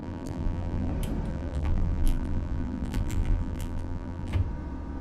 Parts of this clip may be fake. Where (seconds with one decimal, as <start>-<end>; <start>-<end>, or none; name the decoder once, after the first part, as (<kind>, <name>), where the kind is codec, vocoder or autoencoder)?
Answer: 0.0-0.9 (vocoder, BigVGAN v2); 1.3-4.3